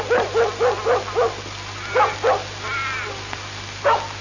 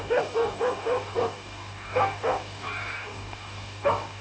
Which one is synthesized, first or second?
second